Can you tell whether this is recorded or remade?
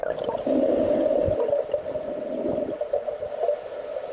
recorded